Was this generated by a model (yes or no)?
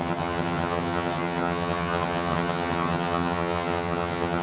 yes